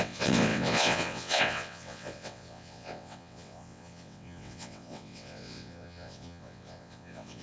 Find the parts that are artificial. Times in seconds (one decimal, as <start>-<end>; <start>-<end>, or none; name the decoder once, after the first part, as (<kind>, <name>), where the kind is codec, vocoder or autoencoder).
0.0-7.4 (vocoder, WaveNeXt)